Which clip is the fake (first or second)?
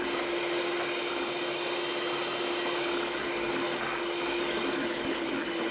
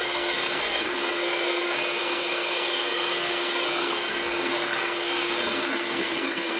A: second